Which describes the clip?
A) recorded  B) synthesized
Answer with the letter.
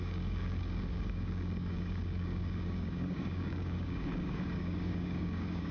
B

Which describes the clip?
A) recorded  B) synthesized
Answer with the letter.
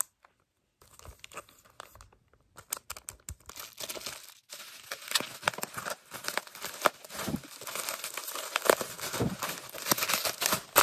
A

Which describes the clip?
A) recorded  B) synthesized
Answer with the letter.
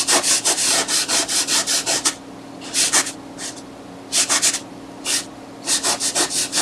A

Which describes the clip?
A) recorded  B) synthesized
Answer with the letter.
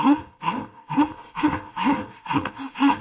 B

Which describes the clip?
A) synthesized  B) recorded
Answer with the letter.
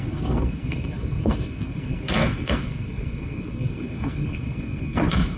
A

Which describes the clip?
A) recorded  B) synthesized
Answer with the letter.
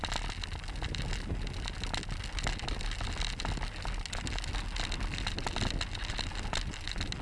A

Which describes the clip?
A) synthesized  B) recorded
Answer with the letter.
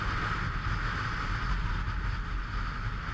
B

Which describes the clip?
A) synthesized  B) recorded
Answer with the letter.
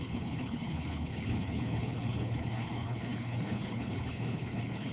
A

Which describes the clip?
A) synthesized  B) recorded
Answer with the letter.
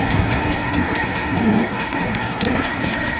A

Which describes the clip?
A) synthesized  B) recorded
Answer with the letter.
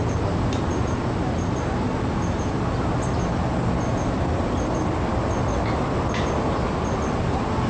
B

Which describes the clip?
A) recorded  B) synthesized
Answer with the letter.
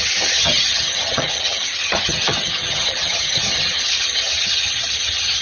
B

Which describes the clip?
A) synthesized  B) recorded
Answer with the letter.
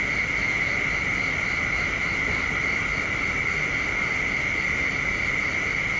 B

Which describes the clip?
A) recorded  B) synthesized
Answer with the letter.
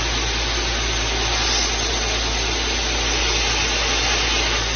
A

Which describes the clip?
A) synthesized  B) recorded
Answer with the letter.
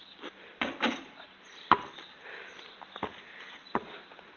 B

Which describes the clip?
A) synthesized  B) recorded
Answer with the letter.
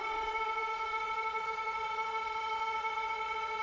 A